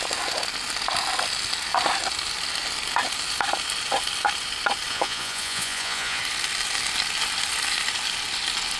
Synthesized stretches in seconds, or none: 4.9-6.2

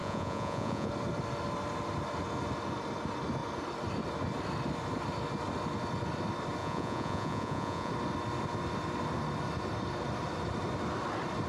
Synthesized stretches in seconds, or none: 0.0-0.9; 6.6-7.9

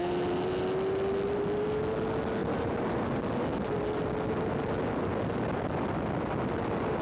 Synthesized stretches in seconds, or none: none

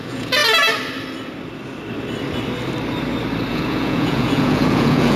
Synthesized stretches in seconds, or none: 0.0-0.4; 3.5-5.2